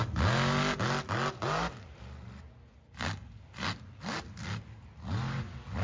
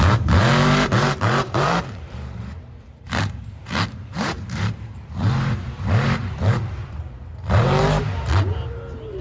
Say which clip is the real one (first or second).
first